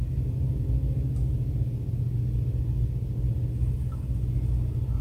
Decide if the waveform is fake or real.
real